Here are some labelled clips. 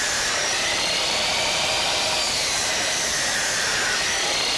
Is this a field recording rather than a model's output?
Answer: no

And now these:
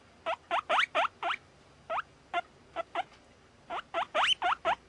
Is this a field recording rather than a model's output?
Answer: yes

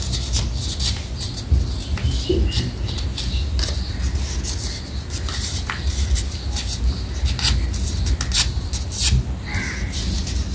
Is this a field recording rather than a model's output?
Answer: yes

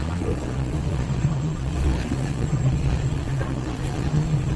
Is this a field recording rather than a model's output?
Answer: no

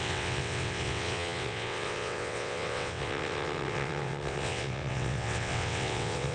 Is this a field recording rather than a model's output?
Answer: no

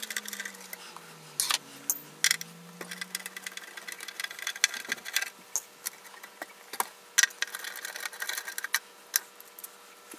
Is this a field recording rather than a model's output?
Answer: yes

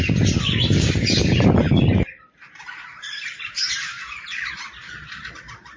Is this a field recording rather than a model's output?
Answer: no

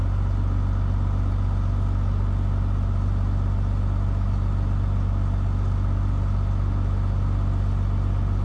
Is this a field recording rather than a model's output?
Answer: yes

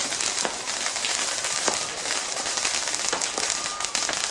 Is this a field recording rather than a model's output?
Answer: yes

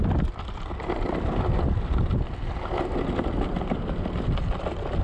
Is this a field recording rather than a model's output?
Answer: yes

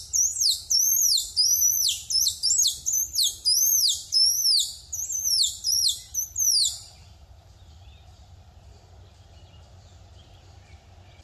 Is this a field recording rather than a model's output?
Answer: yes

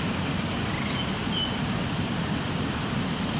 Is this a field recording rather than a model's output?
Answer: yes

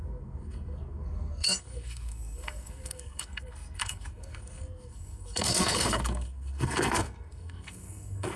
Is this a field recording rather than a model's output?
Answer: no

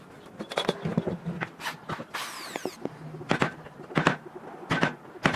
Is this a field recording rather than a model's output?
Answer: yes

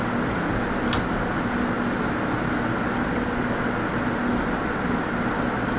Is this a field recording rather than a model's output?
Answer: yes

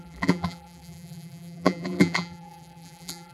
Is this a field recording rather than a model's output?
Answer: no